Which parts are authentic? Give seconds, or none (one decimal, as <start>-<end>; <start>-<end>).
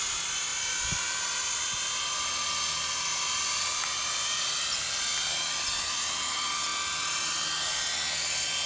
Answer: 0.0-8.7